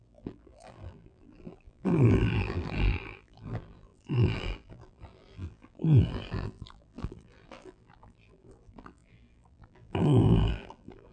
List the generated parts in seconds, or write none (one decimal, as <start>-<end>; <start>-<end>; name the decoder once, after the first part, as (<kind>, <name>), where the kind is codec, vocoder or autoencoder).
0.0-11.1 (vocoder, BigVGAN v2)